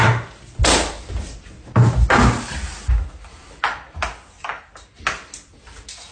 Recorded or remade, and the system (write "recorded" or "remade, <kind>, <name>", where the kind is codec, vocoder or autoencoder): recorded